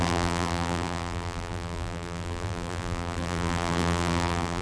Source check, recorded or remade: remade